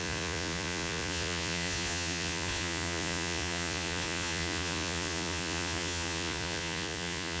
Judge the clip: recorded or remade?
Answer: remade